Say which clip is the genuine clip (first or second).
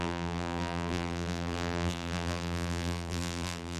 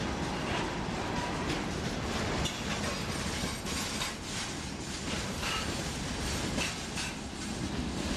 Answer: second